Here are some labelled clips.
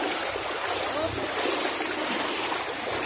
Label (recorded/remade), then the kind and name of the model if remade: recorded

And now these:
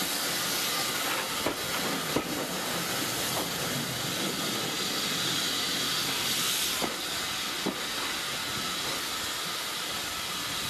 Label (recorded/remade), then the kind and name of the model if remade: recorded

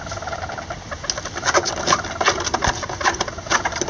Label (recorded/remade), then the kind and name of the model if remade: recorded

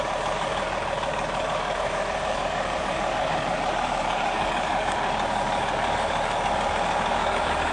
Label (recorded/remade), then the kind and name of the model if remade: remade, codec, DAC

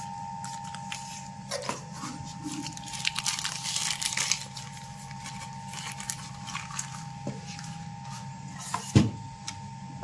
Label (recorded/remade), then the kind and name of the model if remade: recorded